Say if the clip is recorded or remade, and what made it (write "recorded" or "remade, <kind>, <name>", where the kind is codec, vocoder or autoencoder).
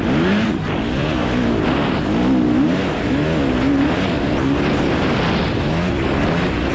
recorded